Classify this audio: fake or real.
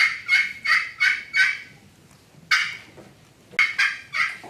real